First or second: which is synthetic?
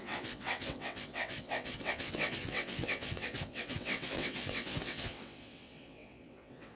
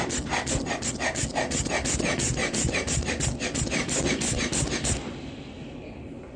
first